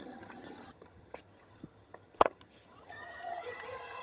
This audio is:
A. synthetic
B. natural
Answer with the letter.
A